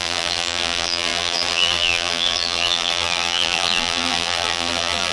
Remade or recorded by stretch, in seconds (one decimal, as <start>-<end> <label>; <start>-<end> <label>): 0.0-5.1 remade